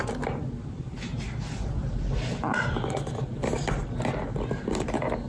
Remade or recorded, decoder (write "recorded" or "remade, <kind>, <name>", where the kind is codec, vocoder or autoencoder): recorded